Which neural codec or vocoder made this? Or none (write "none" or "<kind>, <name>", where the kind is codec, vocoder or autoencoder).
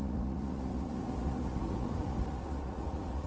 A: vocoder, Vocos